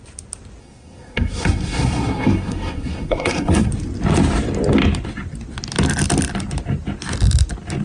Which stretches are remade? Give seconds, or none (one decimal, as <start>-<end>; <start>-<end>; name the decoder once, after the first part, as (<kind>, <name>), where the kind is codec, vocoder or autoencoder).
0.6-3.7 (codec, SNAC)